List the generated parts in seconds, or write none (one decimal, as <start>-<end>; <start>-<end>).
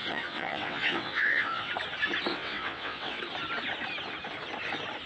0.0-1.7; 2.3-3.2